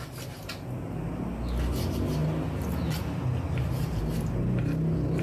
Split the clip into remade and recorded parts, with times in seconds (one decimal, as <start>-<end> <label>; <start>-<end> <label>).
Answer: 0.0-5.2 recorded